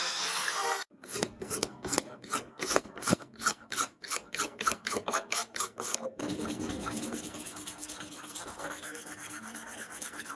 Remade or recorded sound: remade